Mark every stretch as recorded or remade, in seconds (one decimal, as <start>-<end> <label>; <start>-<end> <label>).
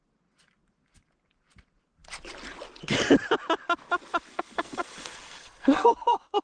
0.0-4.3 recorded; 4.3-6.4 remade